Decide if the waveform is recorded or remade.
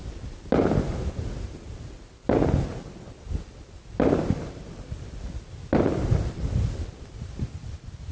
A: recorded